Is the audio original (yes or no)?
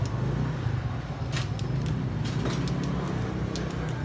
yes